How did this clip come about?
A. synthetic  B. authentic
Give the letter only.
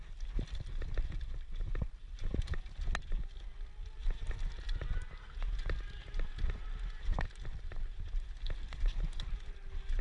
B